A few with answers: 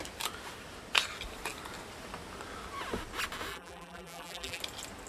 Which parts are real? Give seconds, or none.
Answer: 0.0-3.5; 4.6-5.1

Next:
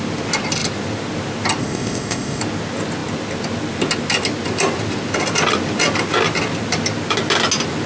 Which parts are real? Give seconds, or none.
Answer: 0.0-1.6; 2.4-7.9

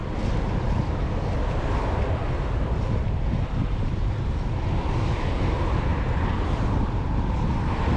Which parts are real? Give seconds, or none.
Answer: 1.8-8.0

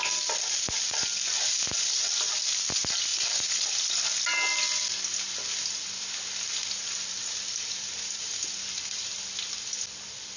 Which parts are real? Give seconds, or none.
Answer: 0.0-6.6; 8.3-10.4

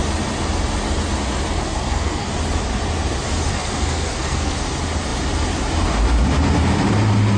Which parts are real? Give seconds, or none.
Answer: 0.0-1.5; 2.3-3.5; 4.6-7.4

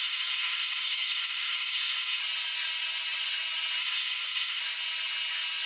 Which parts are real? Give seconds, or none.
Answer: 2.2-3.8; 4.6-5.7

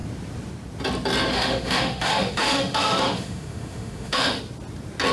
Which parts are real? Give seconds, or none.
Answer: 0.0-1.3; 4.4-5.1